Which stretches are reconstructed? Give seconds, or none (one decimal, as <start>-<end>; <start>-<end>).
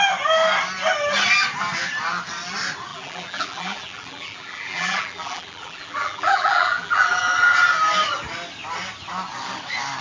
2.9-7.3